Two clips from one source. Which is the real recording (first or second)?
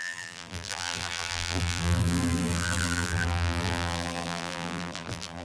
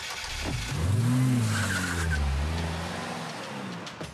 second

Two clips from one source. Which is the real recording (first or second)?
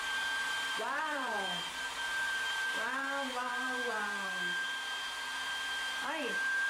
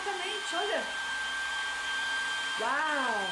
second